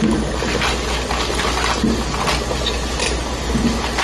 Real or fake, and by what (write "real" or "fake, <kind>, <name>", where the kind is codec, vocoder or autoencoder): real